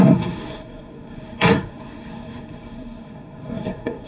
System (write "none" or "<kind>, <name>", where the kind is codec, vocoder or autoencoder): codec, SNAC